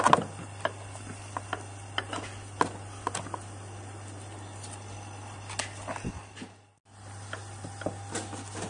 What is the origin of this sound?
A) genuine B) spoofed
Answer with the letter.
A